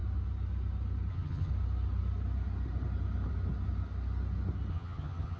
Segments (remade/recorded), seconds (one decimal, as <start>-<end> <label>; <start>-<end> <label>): 0.0-1.1 recorded; 1.1-1.5 remade; 1.5-4.7 recorded; 4.7-5.4 remade